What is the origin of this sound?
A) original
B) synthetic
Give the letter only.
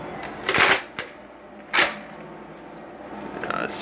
A